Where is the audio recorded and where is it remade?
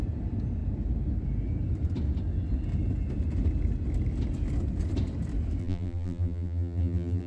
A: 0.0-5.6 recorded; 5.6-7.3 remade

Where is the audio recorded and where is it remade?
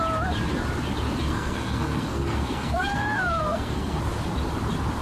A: 0.0-1.2 recorded; 1.2-4.0 remade; 4.0-5.0 recorded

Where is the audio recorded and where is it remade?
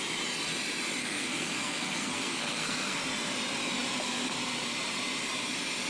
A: 0.0-1.0 recorded; 1.0-3.0 remade; 3.0-5.9 recorded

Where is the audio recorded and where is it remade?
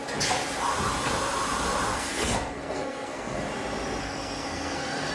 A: 0.0-1.9 recorded; 1.9-3.4 remade; 3.4-4.0 recorded; 4.0-5.1 remade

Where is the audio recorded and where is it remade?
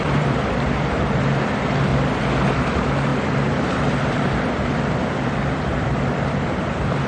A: 0.0-1.9 remade; 1.9-2.5 recorded; 2.5-7.1 remade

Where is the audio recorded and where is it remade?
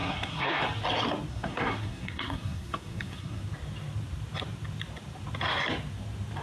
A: 0.0-0.6 remade; 0.6-1.3 recorded; 1.3-3.4 remade; 3.4-6.4 recorded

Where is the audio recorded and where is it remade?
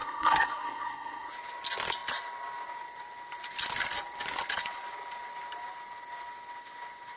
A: 0.0-1.3 remade; 1.3-7.2 recorded